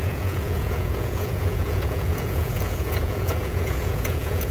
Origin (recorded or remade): remade